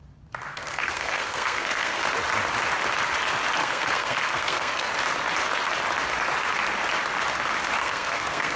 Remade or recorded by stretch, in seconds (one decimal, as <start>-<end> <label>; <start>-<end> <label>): 0.0-0.5 recorded; 0.5-2.0 remade; 2.0-3.6 recorded; 3.6-4.9 remade; 4.9-7.8 recorded; 7.8-8.6 remade